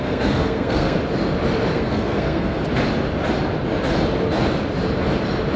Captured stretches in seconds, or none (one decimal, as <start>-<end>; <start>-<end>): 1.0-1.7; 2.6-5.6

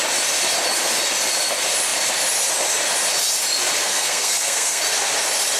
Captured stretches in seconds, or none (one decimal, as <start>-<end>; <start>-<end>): 0.0-3.8; 4.8-5.6

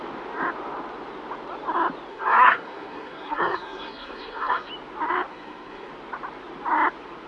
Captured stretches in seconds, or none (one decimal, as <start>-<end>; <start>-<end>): 0.0-2.1; 4.7-5.3; 5.9-7.3

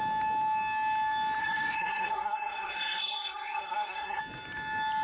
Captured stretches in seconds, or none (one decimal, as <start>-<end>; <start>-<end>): 0.0-1.4; 4.2-5.0